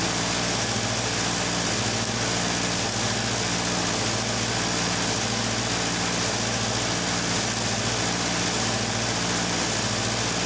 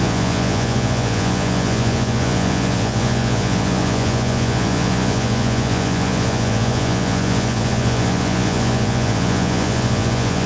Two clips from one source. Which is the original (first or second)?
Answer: first